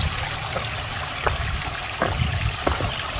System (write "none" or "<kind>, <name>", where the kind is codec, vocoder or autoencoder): none